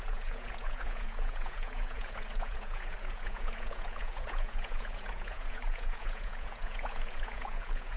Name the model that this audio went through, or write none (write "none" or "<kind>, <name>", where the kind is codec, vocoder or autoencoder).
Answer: vocoder, Vocos